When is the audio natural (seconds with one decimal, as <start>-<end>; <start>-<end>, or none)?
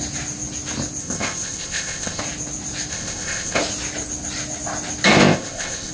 0.0-1.0; 2.2-2.9; 3.6-5.1